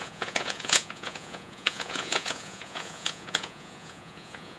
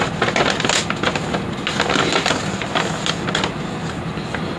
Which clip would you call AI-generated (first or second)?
first